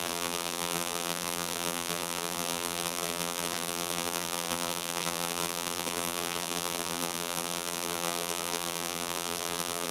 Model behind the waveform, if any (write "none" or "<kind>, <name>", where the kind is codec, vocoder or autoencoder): vocoder, BigVGAN v2